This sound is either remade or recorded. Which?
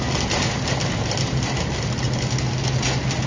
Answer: recorded